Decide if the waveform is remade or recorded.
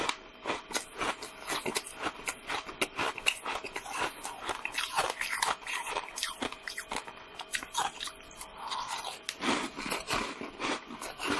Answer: recorded